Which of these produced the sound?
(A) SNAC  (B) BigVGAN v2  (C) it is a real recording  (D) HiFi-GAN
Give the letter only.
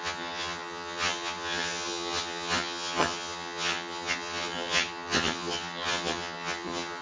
D